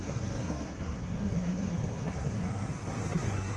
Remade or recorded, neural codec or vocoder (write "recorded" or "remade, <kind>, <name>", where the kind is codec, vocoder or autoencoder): remade, codec, SNAC